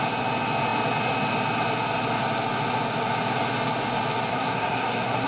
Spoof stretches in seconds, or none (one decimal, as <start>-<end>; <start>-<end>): 4.3-5.3